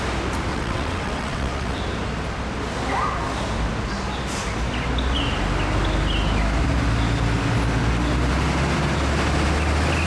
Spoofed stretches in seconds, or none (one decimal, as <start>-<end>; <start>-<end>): 0.5-1.8